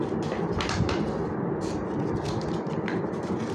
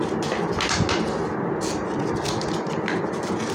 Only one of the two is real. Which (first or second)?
second